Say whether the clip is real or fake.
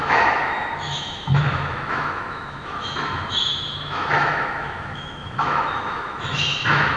fake